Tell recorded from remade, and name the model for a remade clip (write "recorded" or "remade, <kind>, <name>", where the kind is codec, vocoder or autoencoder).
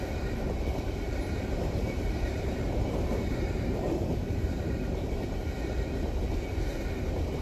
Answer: remade, vocoder, BigVGAN v2